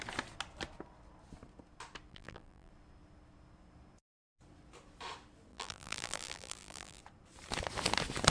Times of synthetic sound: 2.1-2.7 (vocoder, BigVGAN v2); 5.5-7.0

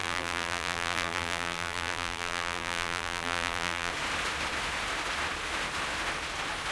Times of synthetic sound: 0.0-3.9 (vocoder, BigVGAN v2)

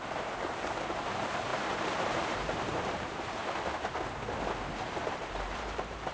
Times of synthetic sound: 0.0-3.4 (vocoder, BigVGAN v2); 5.0-6.1

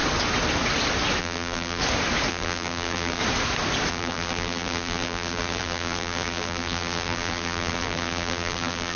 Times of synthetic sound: 1.2-1.8 (vocoder, BigVGAN v2); 2.3-3.2; 3.9-9.0

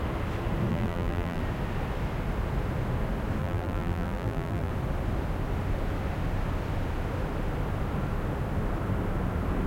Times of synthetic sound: 0.7-1.4 (vocoder, BigVGAN v2); 3.4-4.7